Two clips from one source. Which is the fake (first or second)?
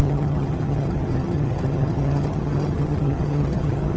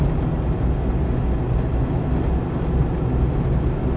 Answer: first